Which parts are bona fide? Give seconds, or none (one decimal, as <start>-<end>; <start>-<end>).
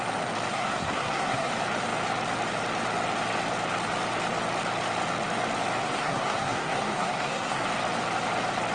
0.0-0.5; 1.5-5.8; 7.6-8.7